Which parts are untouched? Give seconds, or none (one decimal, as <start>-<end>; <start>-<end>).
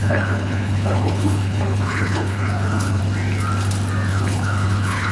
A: 3.0-4.1